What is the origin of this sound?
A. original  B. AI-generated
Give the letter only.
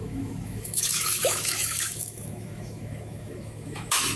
B